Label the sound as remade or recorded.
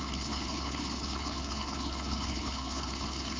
remade